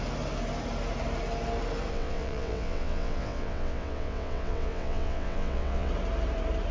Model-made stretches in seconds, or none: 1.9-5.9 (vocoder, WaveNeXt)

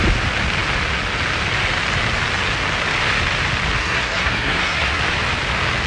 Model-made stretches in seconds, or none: 3.8-5.0 (codec, SNAC)

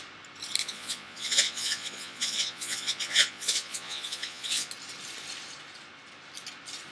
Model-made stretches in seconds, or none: 0.6-4.7 (vocoder, Vocos)

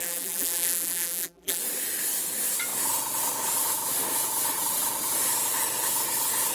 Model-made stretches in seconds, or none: 0.0-1.6 (vocoder, BigVGAN v2)